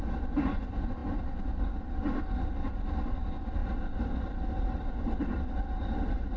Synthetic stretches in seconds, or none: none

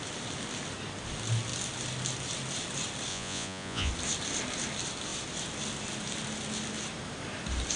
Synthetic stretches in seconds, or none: 3.1-3.9 (vocoder, Vocos)

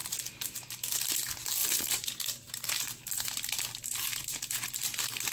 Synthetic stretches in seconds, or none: 1.6-3.1 (vocoder, BigVGAN v2)